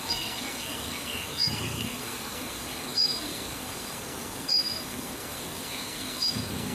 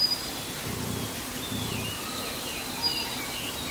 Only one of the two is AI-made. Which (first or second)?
first